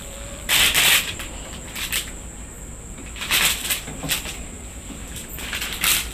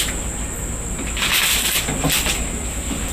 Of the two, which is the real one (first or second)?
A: second